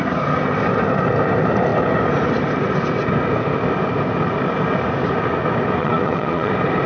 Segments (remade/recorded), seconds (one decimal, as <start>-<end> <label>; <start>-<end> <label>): 0.0-5.8 recorded; 5.8-6.5 remade; 6.5-6.9 recorded